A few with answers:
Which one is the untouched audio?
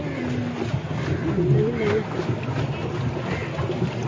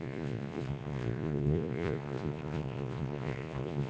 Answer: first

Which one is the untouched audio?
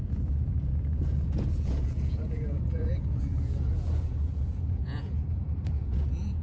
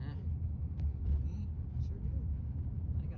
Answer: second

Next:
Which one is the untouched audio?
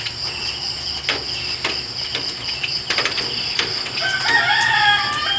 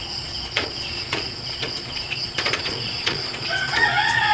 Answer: first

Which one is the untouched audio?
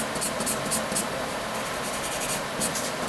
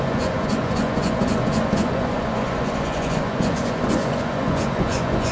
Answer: first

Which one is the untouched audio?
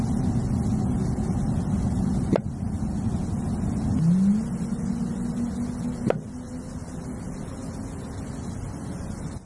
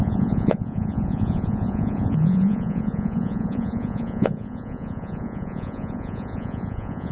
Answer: first